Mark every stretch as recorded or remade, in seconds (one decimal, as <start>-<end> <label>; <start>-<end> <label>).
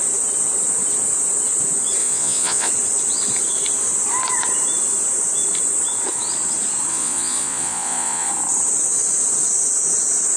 0.0-2.0 recorded; 2.0-2.7 remade; 2.7-6.9 recorded; 6.9-8.3 remade; 8.3-10.4 recorded